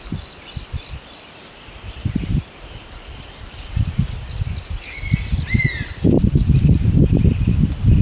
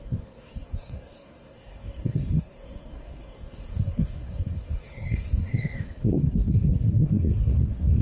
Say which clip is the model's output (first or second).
second